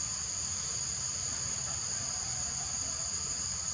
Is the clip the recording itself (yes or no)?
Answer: yes